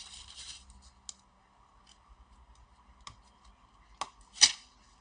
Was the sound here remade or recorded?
recorded